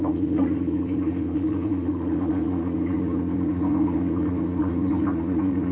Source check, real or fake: fake